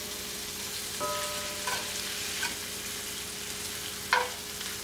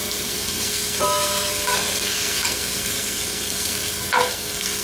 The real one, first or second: first